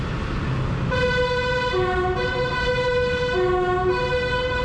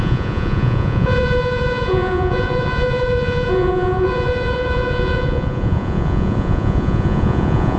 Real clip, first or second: first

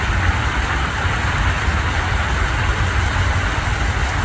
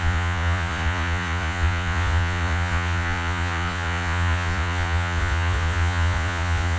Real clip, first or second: first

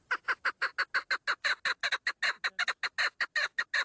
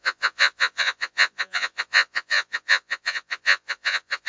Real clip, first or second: first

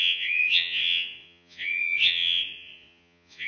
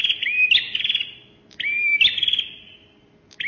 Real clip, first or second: second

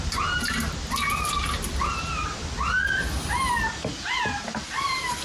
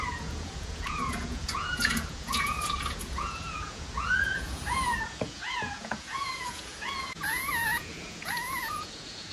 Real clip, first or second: first